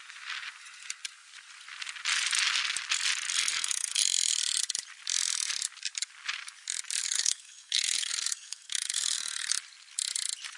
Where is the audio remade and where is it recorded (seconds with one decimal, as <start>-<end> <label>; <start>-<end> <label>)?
0.0-3.5 recorded; 3.5-4.0 remade; 4.0-7.0 recorded; 7.0-9.5 remade; 9.5-10.6 recorded